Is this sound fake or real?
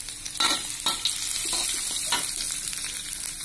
real